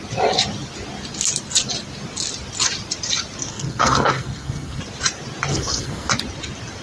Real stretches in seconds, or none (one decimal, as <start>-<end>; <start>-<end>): 0.0-3.5; 4.8-5.5; 6.1-6.8